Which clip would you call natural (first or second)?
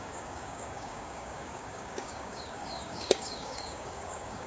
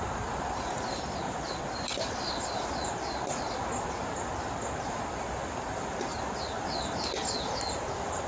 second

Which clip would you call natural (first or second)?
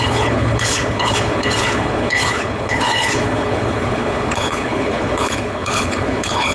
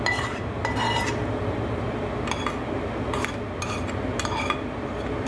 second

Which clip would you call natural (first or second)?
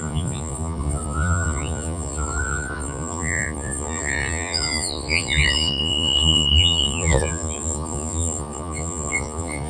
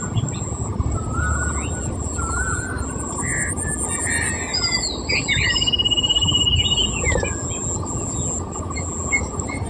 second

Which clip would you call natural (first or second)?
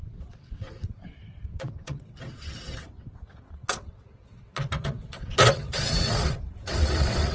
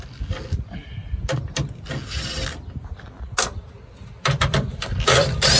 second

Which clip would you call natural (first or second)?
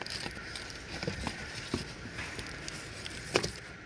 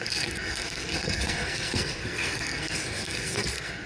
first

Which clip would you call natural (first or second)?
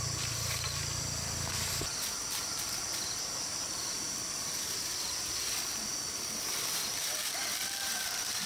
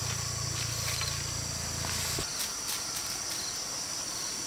second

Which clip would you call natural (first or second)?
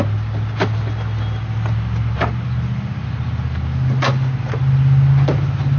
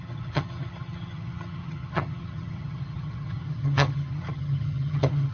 first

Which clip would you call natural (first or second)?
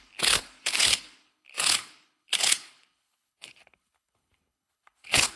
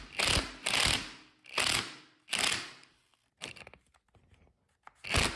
second